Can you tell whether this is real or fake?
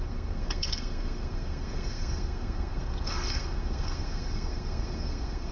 fake